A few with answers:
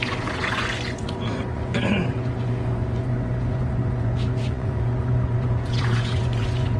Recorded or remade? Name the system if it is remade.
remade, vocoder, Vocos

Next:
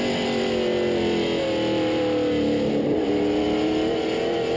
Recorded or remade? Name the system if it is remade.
recorded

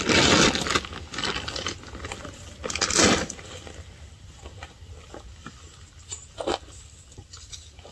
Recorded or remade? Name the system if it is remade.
recorded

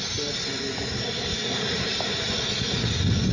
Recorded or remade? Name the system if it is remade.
recorded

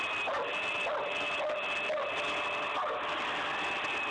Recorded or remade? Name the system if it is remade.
recorded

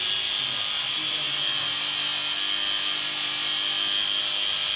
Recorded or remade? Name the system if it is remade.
recorded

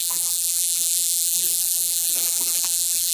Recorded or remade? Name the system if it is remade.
remade, vocoder, BigVGAN v2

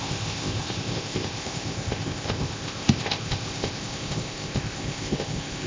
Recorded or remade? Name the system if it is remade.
remade, codec, ZipCodec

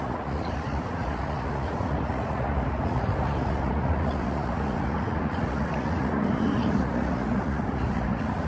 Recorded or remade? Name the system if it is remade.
remade, vocoder, Vocos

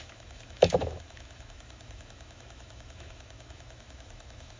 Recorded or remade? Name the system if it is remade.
remade, autoencoder, DAC-VAE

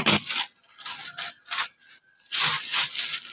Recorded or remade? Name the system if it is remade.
recorded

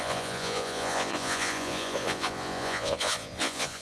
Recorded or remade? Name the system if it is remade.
remade, vocoder, Vocos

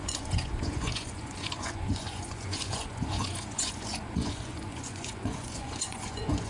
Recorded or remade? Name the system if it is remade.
remade, vocoder, Vocos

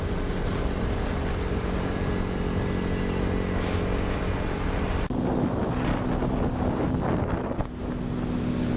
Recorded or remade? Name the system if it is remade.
recorded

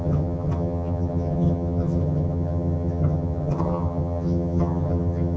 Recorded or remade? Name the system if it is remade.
remade, vocoder, HiFi-GAN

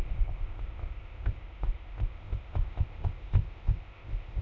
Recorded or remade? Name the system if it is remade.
remade, codec, ZipCodec